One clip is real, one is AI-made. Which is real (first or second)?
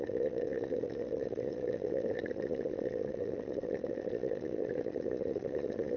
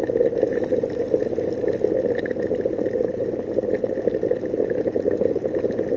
second